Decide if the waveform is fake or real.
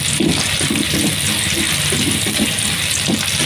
real